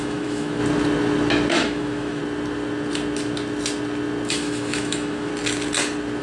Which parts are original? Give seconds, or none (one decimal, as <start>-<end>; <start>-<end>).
0.6-1.5; 2.2-4.3; 5.3-6.2